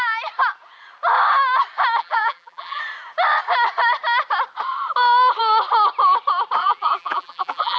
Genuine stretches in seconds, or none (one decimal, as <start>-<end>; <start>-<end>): 0.0-2.0; 2.8-6.6